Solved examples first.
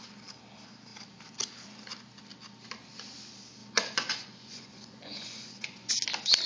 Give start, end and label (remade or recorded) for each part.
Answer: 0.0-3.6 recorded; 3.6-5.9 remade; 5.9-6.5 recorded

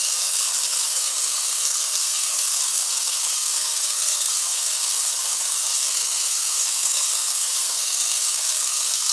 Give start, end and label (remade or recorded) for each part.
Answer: 0.0-9.1 remade

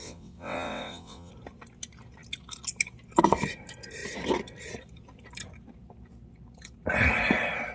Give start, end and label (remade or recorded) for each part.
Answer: 0.0-1.3 remade; 1.3-7.7 recorded

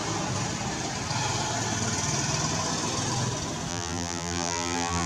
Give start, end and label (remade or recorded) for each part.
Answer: 0.0-3.7 recorded; 3.7-5.1 remade

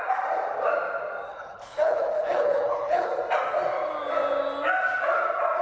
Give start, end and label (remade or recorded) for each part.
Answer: 0.0-1.3 recorded; 1.3-3.1 remade; 3.1-5.6 recorded

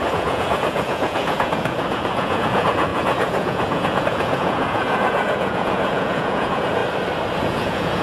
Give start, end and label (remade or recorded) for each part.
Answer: 0.0-6.8 remade; 6.8-7.4 recorded; 7.4-8.0 remade

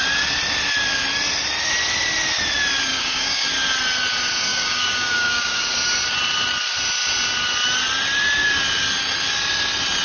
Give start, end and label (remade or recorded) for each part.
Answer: 0.0-2.9 recorded; 2.9-3.5 remade; 3.5-4.5 recorded; 4.5-5.6 remade; 5.6-10.0 recorded